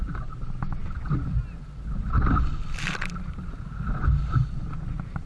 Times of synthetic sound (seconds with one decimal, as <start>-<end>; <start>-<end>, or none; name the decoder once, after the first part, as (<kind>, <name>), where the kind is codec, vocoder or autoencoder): none